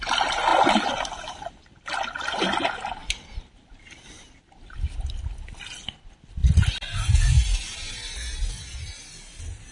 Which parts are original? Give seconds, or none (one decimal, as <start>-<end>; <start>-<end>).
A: 0.0-9.7